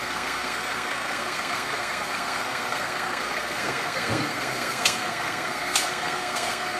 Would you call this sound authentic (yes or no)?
no